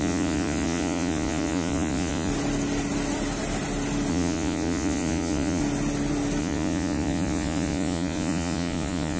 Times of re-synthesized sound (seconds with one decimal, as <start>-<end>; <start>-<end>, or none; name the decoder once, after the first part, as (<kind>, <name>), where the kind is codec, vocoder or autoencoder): 0.0-2.3 (vocoder, Vocos); 4.1-5.6; 6.4-9.2